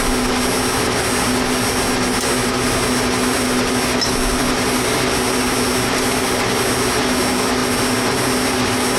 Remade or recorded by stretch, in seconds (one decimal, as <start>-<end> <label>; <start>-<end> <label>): 0.0-9.0 recorded